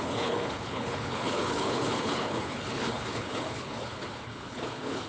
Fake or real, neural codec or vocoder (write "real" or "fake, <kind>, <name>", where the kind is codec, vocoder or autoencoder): fake, codec, HILCodec